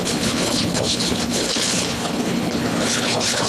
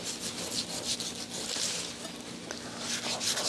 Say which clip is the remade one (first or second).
first